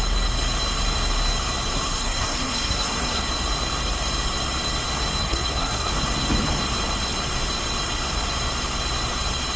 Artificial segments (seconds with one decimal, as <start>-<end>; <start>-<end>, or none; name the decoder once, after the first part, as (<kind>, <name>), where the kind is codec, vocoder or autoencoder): 1.7-3.2 (codec, SNAC); 5.2-5.9